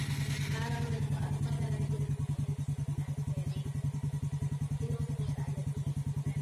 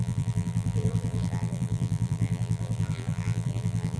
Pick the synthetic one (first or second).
second